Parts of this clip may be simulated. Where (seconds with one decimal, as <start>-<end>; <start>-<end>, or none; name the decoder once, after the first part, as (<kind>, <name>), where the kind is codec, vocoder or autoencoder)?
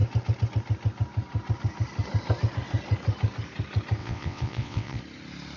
4.0-5.0 (vocoder, WaveNeXt)